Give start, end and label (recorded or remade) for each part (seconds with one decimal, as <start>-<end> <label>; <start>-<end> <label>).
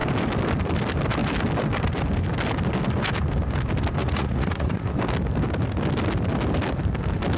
0.0-4.0 recorded; 4.0-4.9 remade; 4.9-7.4 recorded